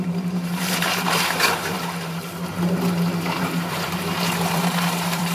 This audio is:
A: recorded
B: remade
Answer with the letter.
B